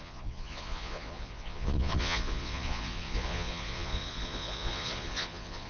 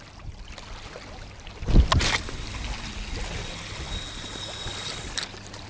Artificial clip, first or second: first